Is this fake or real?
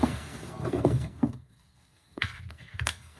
fake